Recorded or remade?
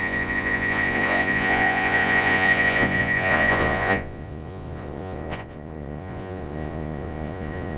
remade